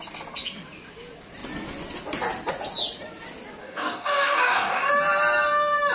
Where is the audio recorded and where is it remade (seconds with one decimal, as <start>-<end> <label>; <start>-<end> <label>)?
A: 0.0-3.6 recorded; 3.6-4.9 remade; 4.9-5.9 recorded